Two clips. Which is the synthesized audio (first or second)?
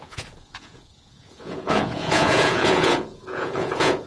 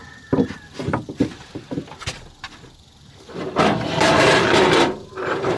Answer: first